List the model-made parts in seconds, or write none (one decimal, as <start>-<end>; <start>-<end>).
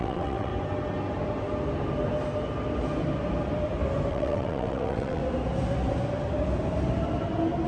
0.0-0.5; 4.1-5.2